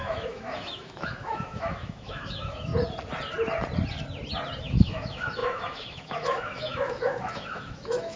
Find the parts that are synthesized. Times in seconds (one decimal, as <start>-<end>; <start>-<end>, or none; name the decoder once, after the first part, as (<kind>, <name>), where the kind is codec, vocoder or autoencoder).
0.0-2.7 (autoencoder, DAC-VAE); 4.6-8.2